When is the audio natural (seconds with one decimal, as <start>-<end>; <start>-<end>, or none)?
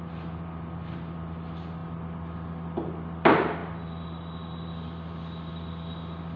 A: none